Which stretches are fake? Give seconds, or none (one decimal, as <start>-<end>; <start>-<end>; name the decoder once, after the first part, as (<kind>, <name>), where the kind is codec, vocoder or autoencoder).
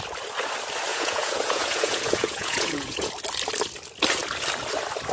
0.9-3.1 (vocoder, Vocos)